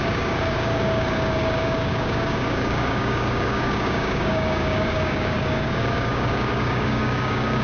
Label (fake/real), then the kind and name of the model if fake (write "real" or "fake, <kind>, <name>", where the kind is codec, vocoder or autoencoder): fake, codec, DAC